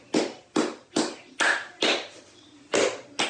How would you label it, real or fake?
real